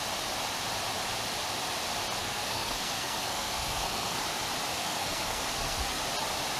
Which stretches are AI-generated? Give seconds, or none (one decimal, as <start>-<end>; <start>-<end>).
2.2-4.2; 4.7-6.0

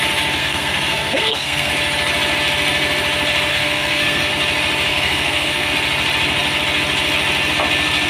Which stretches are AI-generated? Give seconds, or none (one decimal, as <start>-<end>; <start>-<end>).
0.4-1.7; 3.5-4.3; 4.9-5.7

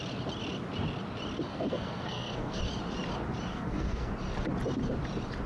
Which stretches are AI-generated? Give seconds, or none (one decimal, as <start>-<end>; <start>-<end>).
1.5-2.6; 3.5-4.1

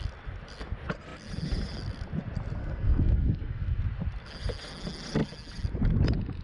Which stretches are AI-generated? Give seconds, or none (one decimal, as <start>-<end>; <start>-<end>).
2.6-3.8

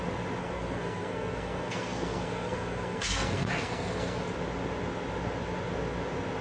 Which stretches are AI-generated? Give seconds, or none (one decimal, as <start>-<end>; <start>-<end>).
0.4-4.2